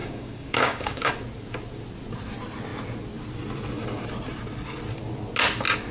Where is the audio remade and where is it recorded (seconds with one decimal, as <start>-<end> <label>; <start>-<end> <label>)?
0.0-1.1 remade; 1.1-5.9 recorded